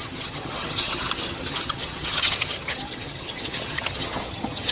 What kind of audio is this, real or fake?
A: fake